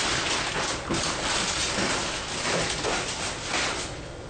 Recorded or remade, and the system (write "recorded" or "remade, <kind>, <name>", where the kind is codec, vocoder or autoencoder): recorded